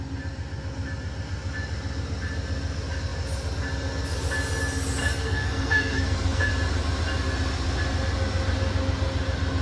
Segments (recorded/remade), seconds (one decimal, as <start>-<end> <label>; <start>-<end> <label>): 0.0-5.0 recorded; 5.0-6.5 remade; 6.5-9.6 recorded